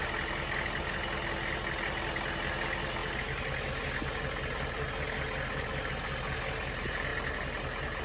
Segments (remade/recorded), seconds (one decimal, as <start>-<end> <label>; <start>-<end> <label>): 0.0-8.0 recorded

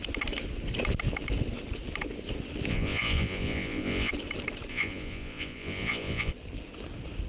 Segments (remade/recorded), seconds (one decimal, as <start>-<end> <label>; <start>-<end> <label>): 0.0-2.7 recorded; 2.7-4.1 remade; 4.1-4.7 recorded; 4.7-6.3 remade; 6.3-7.3 recorded

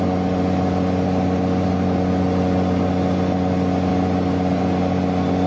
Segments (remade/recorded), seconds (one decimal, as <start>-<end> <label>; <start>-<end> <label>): 0.0-5.5 recorded